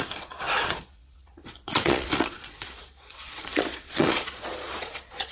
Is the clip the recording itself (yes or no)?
no